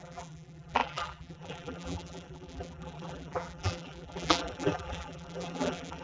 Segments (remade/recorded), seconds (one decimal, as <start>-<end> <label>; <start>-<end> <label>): 0.0-6.0 remade